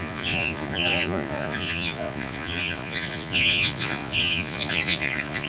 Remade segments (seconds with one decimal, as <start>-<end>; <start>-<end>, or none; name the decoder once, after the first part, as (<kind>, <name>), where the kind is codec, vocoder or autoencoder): 0.0-5.5 (vocoder, Vocos)